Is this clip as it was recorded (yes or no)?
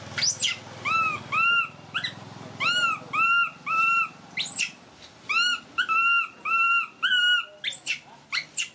yes